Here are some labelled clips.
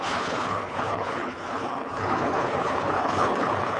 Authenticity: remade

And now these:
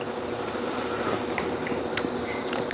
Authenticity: recorded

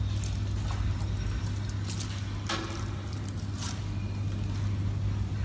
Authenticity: recorded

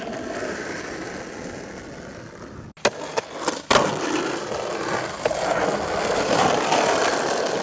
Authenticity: recorded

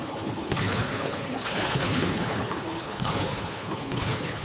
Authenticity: remade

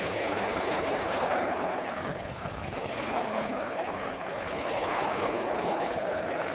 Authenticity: remade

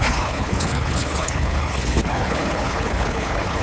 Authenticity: remade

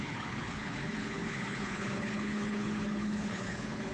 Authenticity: remade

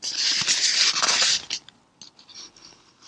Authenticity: recorded